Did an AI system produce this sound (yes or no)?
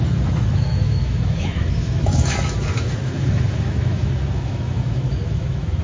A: yes